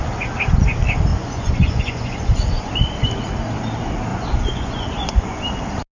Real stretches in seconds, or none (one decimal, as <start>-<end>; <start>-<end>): 0.0-1.1; 2.7-4.1; 5.4-6.0